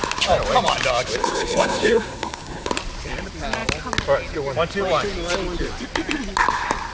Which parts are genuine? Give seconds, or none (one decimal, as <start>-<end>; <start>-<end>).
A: 0.0-1.2; 2.7-6.9